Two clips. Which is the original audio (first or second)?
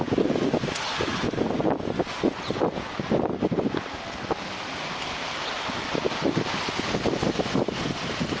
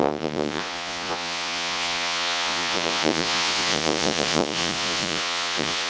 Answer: first